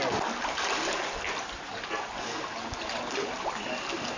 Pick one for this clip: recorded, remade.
recorded